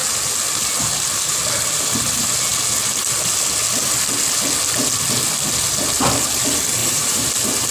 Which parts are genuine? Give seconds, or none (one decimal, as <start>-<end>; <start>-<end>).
0.0-6.8; 7.3-7.7